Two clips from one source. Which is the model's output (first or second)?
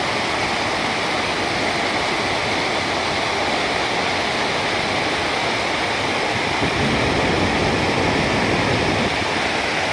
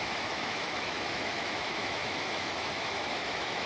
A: second